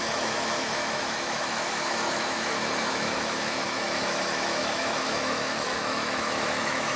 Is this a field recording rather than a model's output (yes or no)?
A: no